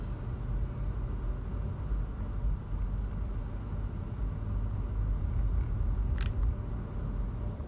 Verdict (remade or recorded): recorded